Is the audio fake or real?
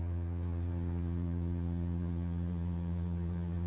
fake